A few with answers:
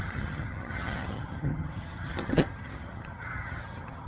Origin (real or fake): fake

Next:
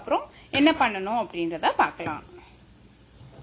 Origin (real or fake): real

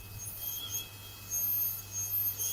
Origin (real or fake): real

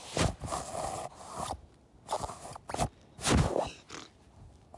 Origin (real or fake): real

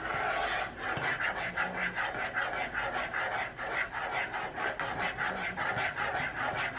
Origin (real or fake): real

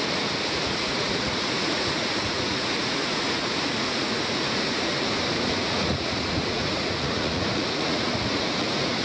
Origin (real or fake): fake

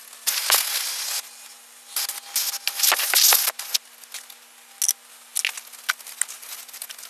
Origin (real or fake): real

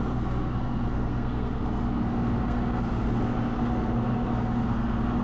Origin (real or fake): fake